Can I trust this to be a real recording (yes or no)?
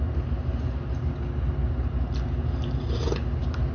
yes